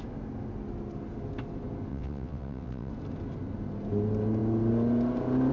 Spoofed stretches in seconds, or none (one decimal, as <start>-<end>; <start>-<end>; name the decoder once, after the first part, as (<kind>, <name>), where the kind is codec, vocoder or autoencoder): 1.9-2.9 (vocoder, WaveNeXt)